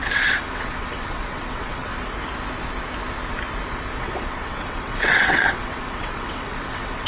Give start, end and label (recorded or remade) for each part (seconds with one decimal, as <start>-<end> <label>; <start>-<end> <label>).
0.0-1.9 remade; 1.9-4.0 recorded; 4.0-7.1 remade